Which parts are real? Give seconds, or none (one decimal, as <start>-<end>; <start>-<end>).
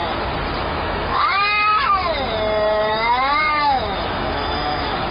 0.0-0.6; 2.0-2.9